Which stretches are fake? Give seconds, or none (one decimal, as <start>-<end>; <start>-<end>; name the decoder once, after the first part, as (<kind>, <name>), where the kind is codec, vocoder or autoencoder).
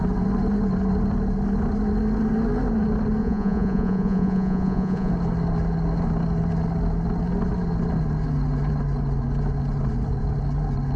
3.2-5.1 (vocoder, Vocos)